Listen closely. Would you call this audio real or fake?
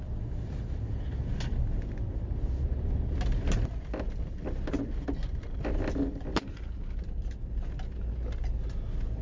real